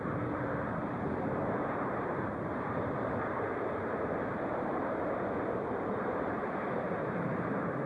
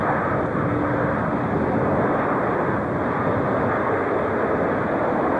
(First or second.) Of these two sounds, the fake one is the first